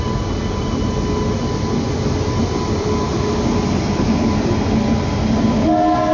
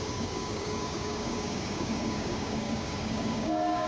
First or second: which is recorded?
first